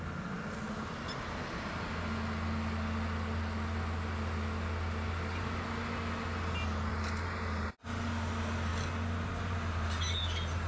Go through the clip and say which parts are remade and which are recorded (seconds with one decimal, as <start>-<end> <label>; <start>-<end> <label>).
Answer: 0.0-10.7 recorded